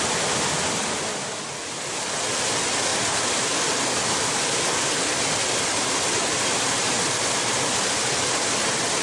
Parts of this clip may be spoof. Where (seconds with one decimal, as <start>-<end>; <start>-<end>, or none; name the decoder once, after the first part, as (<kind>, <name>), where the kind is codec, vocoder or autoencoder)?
none